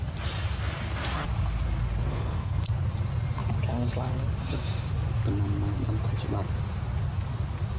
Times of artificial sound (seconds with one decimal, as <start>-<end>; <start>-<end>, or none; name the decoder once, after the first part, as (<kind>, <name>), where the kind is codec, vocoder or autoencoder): 2.1-2.6 (codec, SNAC)